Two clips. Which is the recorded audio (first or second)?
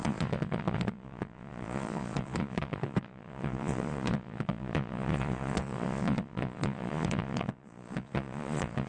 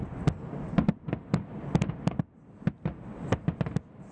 second